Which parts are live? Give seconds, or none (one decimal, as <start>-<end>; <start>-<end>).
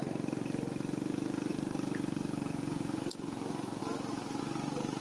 0.0-3.8; 4.4-5.0